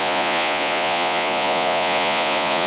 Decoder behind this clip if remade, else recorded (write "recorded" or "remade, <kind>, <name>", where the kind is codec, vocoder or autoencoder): remade, vocoder, Vocos